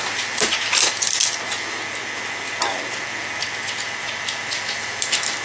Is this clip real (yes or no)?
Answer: yes